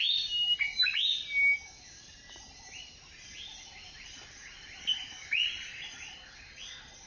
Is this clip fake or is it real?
real